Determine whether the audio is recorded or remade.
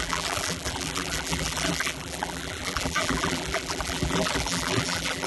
remade